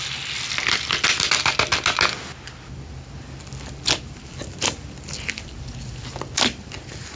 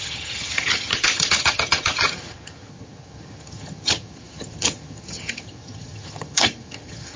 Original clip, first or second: first